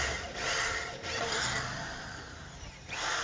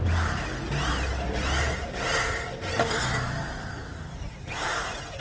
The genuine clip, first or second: second